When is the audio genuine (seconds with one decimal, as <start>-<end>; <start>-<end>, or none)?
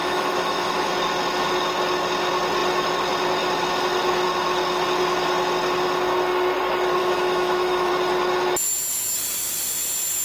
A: 0.9-7.0; 7.9-10.2